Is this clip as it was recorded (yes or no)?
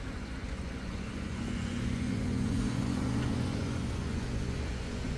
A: no